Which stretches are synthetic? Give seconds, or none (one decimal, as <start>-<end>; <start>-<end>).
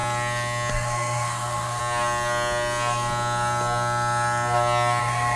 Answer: 0.7-1.8; 5.0-5.4